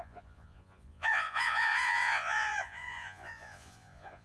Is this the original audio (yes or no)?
no